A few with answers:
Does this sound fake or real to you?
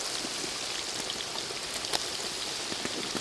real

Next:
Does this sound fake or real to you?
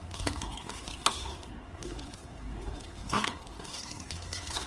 fake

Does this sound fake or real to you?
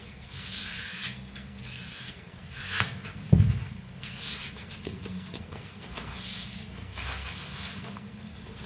fake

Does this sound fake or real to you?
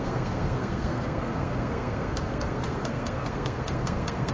fake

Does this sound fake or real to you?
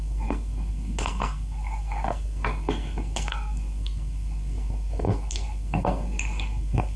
fake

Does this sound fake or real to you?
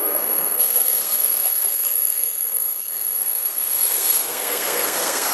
fake